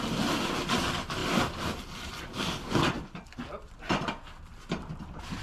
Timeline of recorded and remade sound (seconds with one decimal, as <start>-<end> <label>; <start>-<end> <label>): 0.0-1.2 recorded; 1.2-2.9 remade; 2.9-5.4 recorded